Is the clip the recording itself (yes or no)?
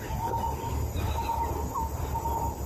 yes